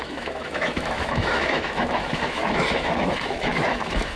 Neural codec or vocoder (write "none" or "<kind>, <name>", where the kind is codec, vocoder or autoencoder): autoencoder, DAC-VAE